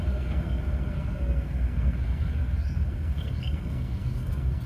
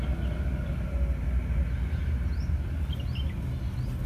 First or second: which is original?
second